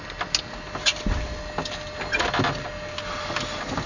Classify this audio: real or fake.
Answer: real